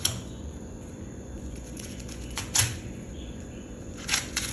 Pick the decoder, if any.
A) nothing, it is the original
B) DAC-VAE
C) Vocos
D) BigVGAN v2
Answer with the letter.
C